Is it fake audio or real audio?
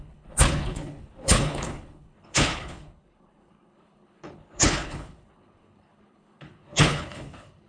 fake